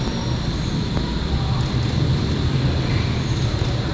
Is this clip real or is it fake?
real